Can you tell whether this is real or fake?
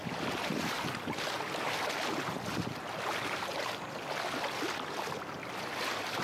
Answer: real